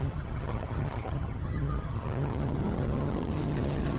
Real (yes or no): no